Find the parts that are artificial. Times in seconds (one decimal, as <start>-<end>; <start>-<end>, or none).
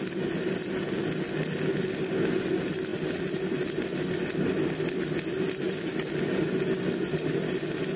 none